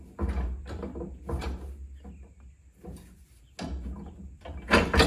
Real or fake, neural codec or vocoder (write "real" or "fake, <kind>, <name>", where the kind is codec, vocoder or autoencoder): real